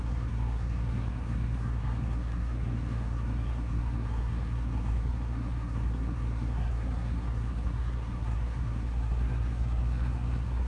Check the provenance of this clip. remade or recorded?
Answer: remade